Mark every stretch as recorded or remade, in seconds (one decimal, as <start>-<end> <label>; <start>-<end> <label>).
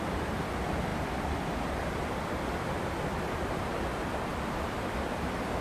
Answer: 0.0-0.9 recorded; 0.9-3.2 remade; 3.2-4.3 recorded; 4.3-5.6 remade